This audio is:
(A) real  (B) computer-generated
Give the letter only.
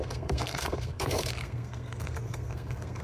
B